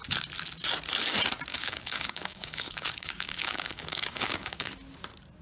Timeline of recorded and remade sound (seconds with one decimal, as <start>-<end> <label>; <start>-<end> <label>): 0.0-1.5 recorded; 1.5-4.7 remade; 4.7-5.4 recorded